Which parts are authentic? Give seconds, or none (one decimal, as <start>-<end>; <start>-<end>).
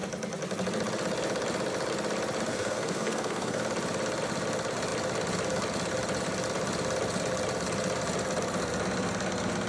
0.0-2.5; 3.6-9.7